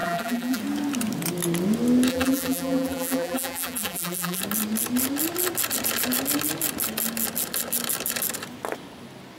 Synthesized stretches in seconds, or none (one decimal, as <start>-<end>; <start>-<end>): 0.0-0.6; 2.1-4.4